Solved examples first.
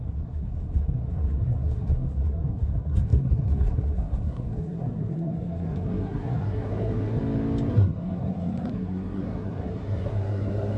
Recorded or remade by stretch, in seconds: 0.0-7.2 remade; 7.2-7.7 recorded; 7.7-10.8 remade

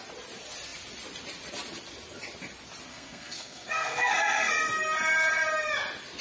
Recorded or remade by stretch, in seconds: 0.0-2.9 recorded; 2.9-4.5 remade; 4.5-6.2 recorded